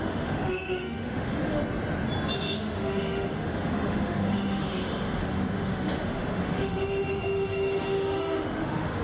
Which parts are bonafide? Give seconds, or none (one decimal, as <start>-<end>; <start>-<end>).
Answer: 1.6-2.4